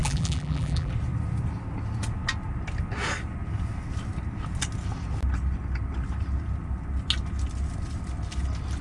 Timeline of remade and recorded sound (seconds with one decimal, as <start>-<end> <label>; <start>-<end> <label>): 0.0-0.9 remade; 0.9-8.8 recorded